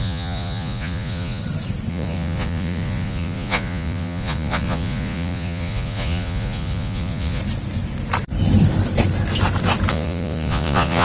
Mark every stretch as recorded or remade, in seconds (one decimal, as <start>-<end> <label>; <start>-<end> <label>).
0.0-1.4 remade; 1.4-1.9 recorded; 1.9-7.4 remade; 7.4-9.9 recorded; 9.9-11.0 remade